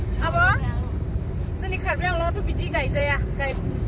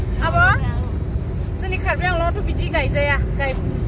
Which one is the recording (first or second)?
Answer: second